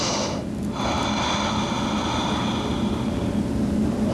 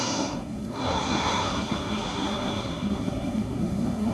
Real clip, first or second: first